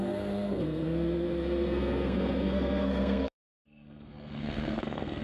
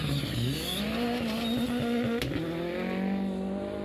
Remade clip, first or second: first